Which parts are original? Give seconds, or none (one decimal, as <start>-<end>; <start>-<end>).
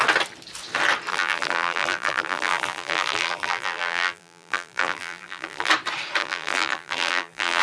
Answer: 0.0-1.1; 5.7-6.2